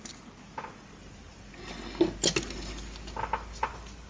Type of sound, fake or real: real